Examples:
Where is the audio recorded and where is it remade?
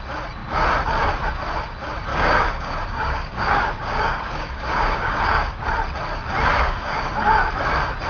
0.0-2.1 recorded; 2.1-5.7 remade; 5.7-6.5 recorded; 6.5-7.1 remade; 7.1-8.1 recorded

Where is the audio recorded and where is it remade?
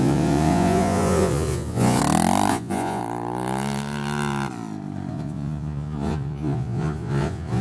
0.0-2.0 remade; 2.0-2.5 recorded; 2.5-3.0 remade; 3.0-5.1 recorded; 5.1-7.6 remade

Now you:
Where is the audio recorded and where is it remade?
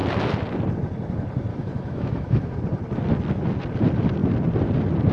0.0-1.5 recorded; 1.5-2.6 remade; 2.6-5.1 recorded